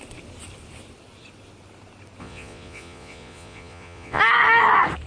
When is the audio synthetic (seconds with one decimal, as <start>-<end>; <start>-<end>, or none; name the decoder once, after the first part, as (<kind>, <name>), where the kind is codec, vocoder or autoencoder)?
2.2-4.2 (vocoder, Vocos)